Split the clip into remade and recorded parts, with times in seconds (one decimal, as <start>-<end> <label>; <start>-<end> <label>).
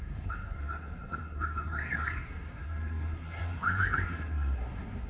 0.0-5.1 remade